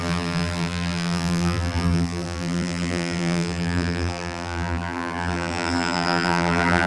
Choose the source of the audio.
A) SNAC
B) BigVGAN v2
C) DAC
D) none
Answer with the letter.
B